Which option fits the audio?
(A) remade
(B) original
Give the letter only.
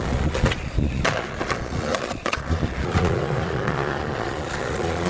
A